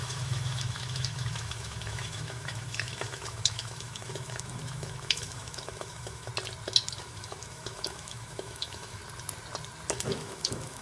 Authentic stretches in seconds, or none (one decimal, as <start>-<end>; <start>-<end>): 6.3-7.0; 9.0-9.9